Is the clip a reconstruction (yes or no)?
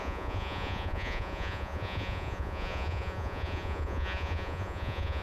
yes